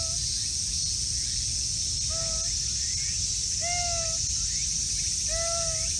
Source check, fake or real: real